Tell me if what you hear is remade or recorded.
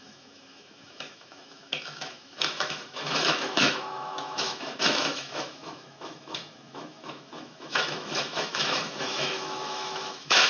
remade